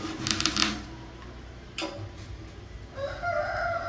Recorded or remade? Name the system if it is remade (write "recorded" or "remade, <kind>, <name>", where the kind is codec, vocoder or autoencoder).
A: recorded